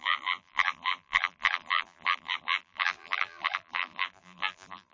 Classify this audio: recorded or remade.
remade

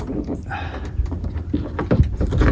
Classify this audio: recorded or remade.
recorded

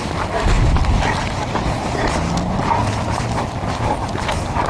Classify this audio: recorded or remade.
recorded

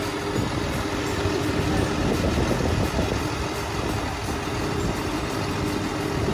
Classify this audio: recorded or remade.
recorded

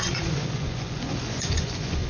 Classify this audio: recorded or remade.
remade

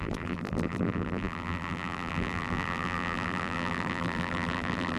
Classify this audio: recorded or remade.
remade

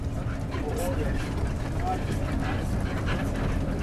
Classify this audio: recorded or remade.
recorded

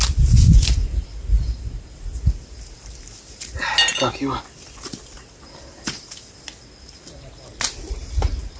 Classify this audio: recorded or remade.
recorded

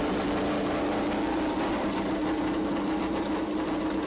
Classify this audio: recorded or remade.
recorded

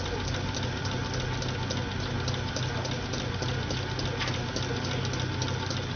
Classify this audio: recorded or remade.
recorded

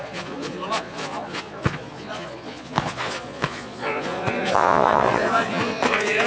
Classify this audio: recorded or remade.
remade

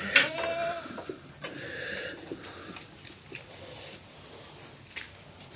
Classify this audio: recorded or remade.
recorded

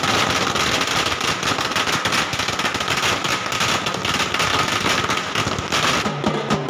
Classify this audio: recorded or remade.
recorded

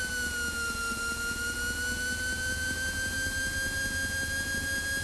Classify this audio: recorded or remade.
recorded